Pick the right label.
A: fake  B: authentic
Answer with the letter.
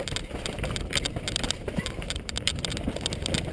A